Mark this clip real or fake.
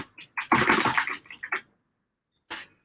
real